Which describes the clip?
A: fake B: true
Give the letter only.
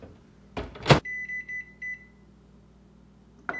B